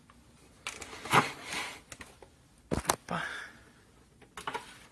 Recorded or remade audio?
recorded